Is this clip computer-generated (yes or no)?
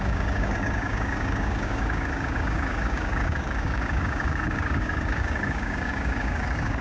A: yes